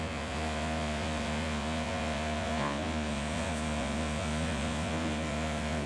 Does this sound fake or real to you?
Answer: fake